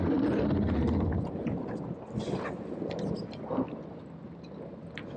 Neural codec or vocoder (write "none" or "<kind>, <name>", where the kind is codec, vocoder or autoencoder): none